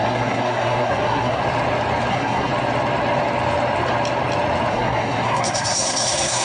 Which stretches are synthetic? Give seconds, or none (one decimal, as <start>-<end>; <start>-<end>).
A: 0.0-1.4; 2.1-2.5; 4.7-6.4